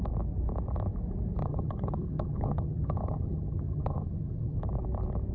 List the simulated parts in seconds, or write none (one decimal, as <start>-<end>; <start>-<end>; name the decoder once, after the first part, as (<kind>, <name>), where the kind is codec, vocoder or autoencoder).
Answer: 1.4-4.6 (vocoder, HiFi-GAN)